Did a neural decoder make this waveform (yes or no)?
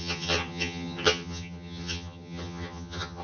yes